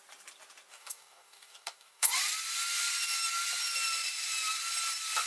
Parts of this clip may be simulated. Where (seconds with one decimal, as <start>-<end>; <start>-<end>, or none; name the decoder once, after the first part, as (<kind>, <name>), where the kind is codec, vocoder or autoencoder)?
0.7-2.1 (codec, DAC)